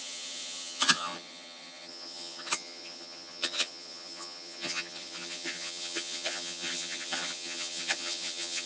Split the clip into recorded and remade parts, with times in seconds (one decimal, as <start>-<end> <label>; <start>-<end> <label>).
0.0-8.7 remade